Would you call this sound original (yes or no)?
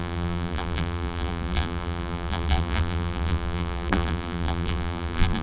no